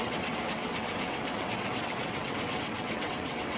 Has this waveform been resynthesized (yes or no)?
yes